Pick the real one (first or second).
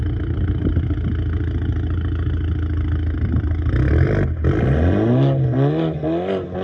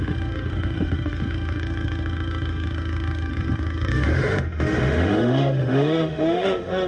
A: first